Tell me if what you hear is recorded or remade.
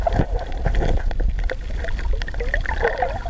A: recorded